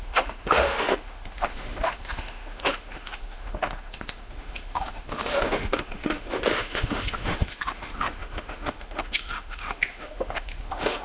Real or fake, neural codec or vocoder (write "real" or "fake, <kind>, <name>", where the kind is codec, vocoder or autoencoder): fake, autoencoder, DAC-VAE